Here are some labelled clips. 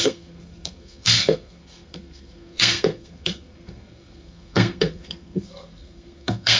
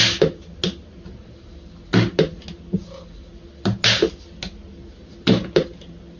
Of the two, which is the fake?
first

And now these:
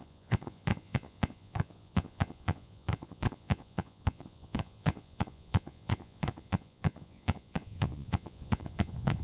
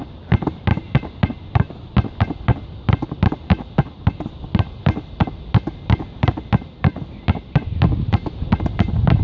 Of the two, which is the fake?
first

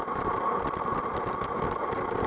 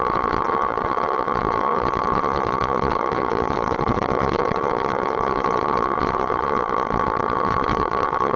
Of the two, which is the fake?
second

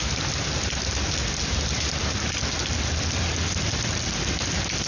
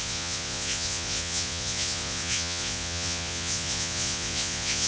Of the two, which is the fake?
second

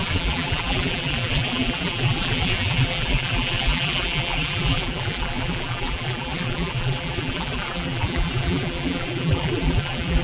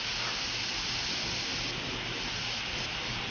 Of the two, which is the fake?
first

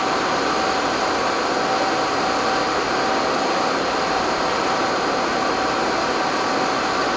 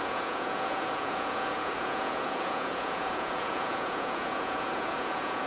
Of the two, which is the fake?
second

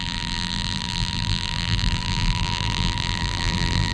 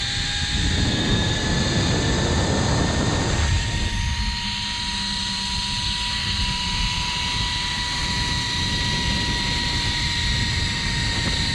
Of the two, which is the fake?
first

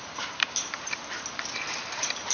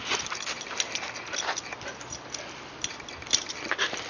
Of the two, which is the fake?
first